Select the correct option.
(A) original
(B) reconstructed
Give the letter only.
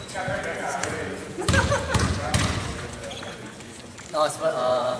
B